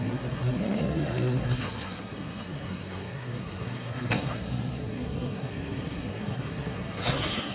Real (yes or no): no